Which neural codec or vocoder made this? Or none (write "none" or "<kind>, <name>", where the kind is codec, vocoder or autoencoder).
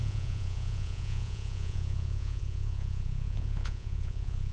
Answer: vocoder, Vocos